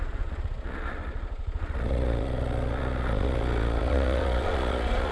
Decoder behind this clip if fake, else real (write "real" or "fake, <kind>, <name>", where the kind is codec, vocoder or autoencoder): fake, vocoder, Vocos